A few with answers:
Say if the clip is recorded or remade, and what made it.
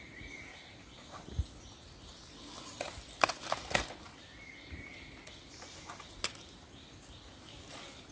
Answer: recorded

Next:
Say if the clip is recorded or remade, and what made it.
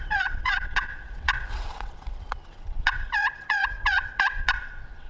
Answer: remade, vocoder, WaveNeXt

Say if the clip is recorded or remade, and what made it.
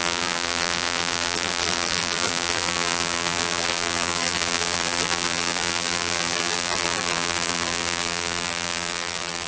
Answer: remade, vocoder, BigVGAN v2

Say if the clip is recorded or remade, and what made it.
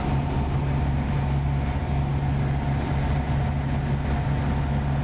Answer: recorded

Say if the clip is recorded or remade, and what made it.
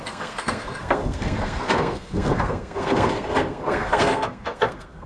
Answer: remade, codec, SNAC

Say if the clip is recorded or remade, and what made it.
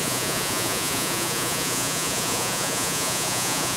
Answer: remade, vocoder, Vocos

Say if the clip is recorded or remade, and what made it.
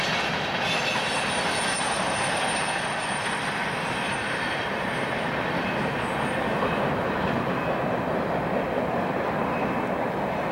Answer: recorded